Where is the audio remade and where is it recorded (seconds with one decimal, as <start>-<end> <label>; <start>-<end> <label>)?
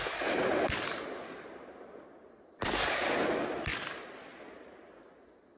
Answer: 0.0-5.6 recorded